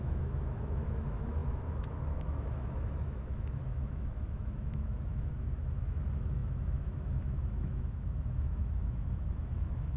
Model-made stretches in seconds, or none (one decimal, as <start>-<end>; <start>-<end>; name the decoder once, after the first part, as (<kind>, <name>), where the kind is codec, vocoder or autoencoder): 0.0-10.0 (autoencoder, DAC-VAE)